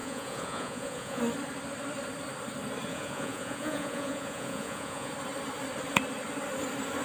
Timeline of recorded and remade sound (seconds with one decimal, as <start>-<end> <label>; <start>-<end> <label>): 0.0-1.2 remade; 1.2-2.9 recorded; 2.9-5.1 remade; 5.1-7.0 recorded